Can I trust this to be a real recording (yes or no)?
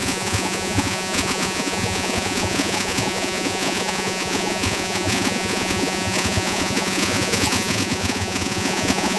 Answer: no